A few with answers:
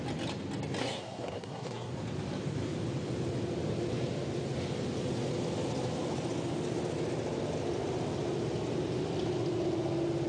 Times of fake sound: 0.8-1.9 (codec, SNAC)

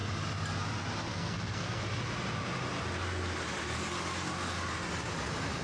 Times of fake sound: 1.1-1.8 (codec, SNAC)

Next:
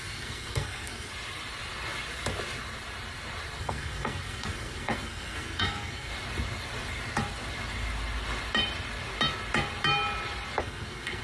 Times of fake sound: 0.0-1.1 (codec, SNAC); 3.6-6.1; 10.6-11.2